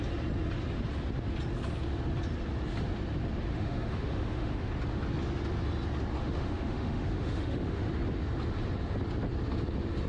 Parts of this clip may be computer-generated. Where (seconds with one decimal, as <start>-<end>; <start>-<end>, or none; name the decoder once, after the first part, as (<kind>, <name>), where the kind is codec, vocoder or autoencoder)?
3.5-4.7 (autoencoder, DAC-VAE); 6.2-7.9